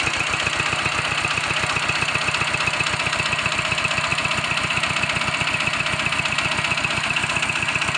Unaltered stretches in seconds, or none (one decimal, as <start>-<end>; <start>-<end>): 0.0-8.0